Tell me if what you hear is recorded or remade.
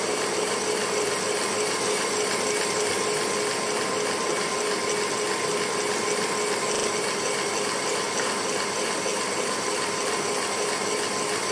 recorded